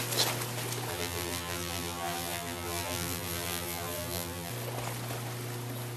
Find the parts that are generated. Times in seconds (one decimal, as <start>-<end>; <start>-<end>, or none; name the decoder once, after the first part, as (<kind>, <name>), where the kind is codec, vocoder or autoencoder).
0.9-4.5 (vocoder, BigVGAN v2)

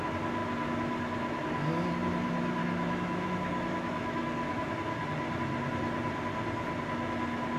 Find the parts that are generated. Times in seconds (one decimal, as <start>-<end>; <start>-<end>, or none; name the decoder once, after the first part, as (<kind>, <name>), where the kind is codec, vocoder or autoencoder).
2.6-4.7 (autoencoder, DAC-VAE)

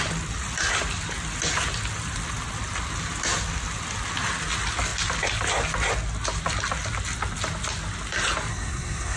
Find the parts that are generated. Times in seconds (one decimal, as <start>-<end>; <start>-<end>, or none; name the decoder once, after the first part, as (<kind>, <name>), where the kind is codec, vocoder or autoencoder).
8.5-9.2 (codec, SNAC)

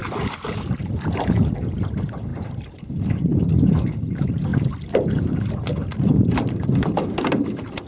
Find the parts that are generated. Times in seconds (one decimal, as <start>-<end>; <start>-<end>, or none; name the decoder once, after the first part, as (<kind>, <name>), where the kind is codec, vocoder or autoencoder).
0.9-4.5 (vocoder, BigVGAN v2); 5.5-7.9

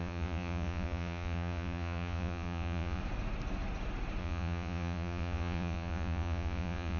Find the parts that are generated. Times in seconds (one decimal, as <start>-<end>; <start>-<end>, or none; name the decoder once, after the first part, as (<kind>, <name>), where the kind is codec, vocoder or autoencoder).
0.0-3.0 (vocoder, Vocos); 4.2-7.0

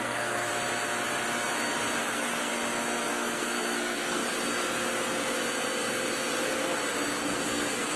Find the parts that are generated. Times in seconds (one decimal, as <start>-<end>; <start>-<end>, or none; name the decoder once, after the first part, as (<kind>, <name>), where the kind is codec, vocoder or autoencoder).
0.0-0.5 (codec, SNAC); 2.0-2.5; 3.1-4.2; 7.2-8.0

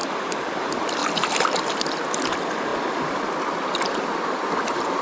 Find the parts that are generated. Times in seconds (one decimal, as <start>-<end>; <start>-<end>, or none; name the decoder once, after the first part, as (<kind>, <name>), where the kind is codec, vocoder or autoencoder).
0.6-1.0 (vocoder, BigVGAN v2); 2.3-2.7; 3.4-5.0